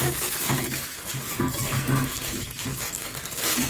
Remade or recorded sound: remade